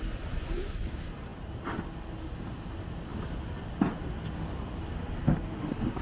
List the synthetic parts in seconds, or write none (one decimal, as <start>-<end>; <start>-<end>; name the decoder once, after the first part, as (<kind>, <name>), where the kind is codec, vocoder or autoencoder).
none